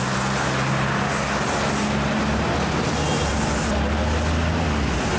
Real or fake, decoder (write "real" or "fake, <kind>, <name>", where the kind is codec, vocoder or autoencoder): real